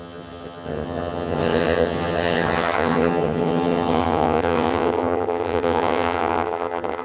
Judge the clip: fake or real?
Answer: fake